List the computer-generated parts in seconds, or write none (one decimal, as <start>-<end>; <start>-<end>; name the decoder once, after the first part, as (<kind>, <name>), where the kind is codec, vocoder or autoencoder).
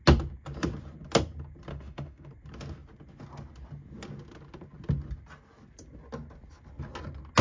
1.7-2.3 (autoencoder, DAC-VAE)